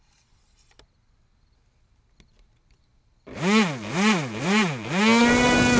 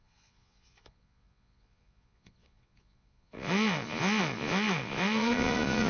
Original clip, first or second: first